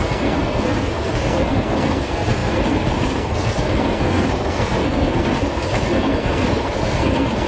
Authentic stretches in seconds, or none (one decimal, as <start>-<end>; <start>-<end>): none